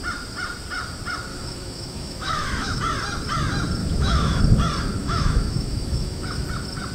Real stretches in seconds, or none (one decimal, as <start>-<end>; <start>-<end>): 0.0-1.3; 2.8-3.8; 4.4-5.0; 6.4-6.9